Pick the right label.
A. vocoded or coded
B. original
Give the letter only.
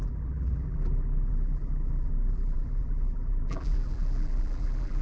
A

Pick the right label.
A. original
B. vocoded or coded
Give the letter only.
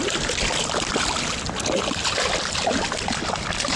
A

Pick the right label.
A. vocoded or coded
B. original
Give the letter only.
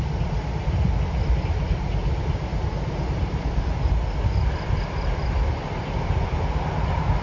B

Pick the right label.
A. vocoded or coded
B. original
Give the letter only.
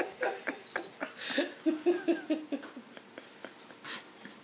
B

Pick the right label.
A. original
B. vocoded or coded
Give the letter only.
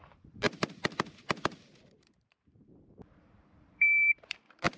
B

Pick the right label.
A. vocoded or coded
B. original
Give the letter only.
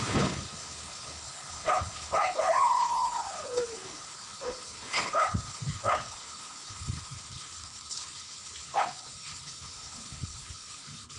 A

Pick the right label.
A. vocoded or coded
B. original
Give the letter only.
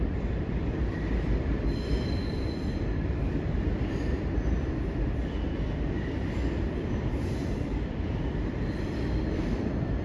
A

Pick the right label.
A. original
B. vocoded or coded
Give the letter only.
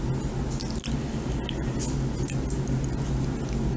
A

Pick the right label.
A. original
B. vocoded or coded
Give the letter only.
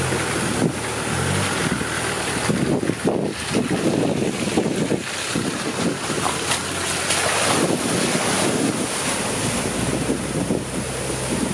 A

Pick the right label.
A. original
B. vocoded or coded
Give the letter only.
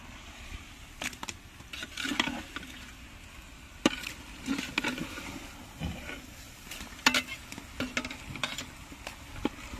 A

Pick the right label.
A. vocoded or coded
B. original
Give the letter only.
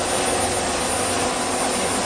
B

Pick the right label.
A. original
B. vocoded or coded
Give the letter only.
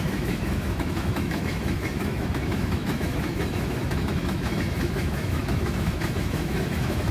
B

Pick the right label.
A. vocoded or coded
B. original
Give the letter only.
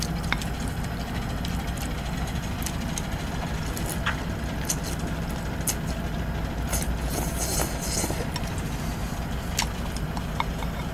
B